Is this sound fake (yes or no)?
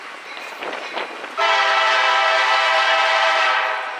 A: no